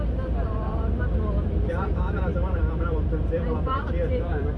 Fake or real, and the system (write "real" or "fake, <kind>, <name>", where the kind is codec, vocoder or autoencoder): fake, vocoder, BigVGAN v2